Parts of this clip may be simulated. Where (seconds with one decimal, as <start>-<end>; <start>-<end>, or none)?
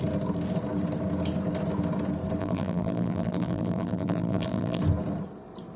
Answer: 2.4-4.8